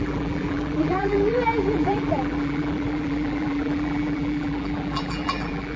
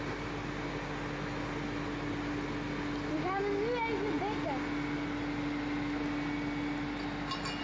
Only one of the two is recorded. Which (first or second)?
second